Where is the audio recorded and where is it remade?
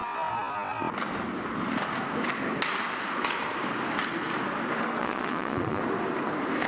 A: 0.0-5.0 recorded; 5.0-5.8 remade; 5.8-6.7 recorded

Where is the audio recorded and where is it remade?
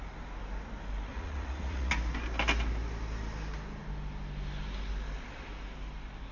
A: 0.0-1.1 recorded; 1.1-1.9 remade; 1.9-6.3 recorded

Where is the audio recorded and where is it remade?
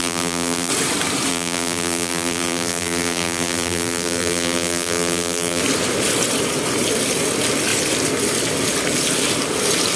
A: 0.0-0.7 remade; 0.7-1.3 recorded; 1.3-5.6 remade; 5.6-10.0 recorded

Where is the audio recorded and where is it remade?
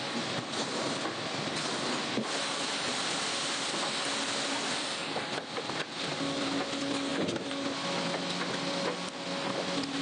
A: 0.0-10.0 recorded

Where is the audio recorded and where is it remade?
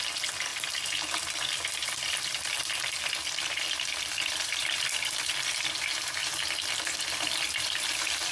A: 0.0-4.6 recorded; 4.6-5.3 remade; 5.3-8.3 recorded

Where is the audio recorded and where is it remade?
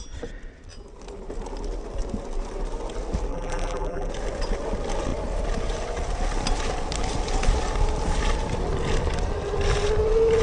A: 0.0-3.3 recorded; 3.3-4.1 remade; 4.1-10.4 recorded